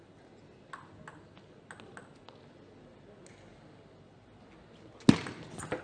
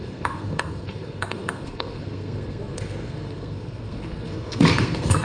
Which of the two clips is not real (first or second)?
second